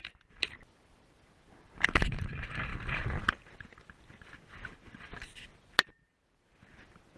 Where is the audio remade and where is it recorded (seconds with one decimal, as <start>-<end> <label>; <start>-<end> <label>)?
0.0-2.7 remade; 2.7-7.2 recorded